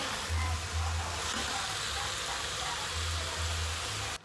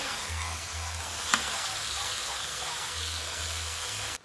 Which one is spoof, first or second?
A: second